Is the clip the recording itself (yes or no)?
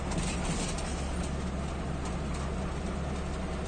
yes